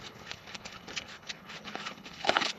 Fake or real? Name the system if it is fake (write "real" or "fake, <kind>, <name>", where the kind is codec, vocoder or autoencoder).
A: fake, codec, HILCodec